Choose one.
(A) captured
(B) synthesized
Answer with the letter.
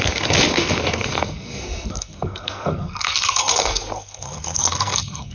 B